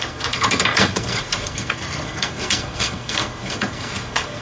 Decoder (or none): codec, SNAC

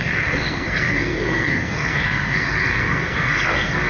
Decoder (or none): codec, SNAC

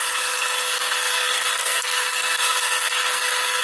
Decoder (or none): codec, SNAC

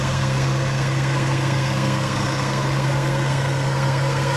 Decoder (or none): codec, SNAC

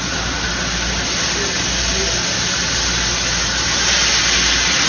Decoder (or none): none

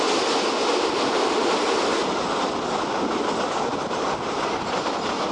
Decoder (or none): none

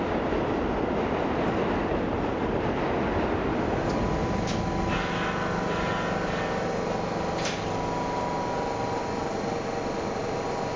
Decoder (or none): none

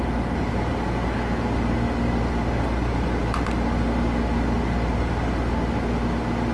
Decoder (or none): none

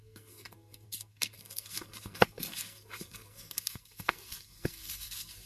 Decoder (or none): codec, SNAC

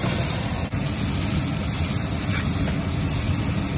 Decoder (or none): none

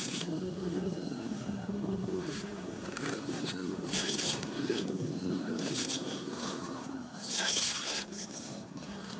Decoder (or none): codec, SNAC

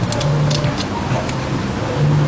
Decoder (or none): none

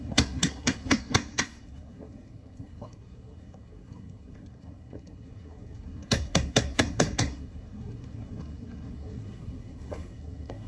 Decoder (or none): codec, SNAC